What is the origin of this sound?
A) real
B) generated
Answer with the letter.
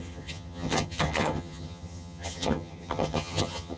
B